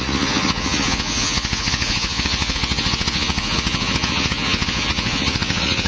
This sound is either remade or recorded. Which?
remade